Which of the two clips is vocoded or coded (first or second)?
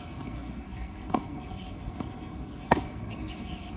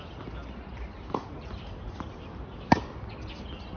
first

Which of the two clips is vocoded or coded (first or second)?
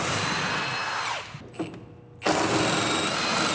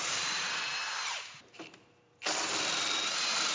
second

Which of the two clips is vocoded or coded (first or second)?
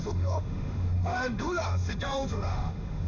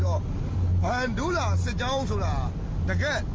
first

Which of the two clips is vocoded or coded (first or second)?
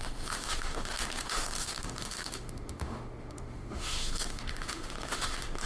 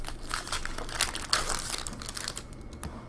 first